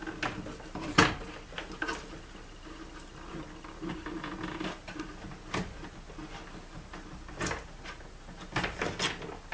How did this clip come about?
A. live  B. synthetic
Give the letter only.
A